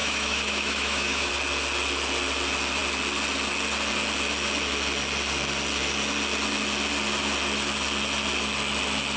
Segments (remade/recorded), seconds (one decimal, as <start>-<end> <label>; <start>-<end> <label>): 0.0-1.3 remade; 1.3-9.2 recorded